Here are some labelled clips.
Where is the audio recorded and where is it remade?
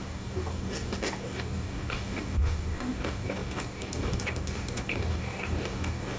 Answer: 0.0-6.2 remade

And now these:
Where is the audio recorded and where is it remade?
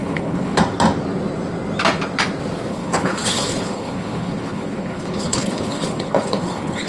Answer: 0.0-0.6 remade; 0.6-2.7 recorded; 2.7-6.9 remade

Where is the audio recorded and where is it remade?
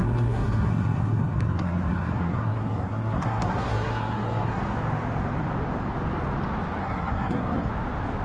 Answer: 0.0-4.6 remade; 4.6-6.8 recorded; 6.8-7.7 remade; 7.7-8.2 recorded